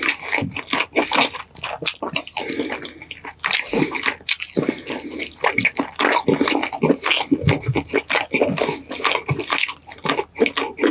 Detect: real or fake real